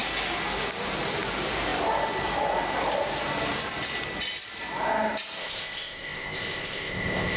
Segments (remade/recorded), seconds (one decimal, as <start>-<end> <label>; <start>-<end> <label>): 0.0-5.4 recorded; 5.4-7.4 remade